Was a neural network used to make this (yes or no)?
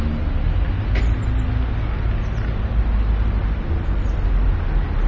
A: no